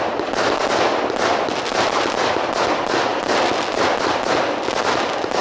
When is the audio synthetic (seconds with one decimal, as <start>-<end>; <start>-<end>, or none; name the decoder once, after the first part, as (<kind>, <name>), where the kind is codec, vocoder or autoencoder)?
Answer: none